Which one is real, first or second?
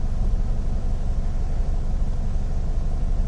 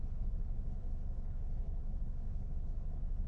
first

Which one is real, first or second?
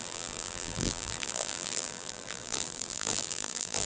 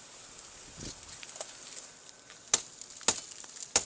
second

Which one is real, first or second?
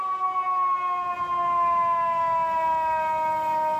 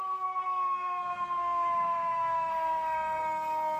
first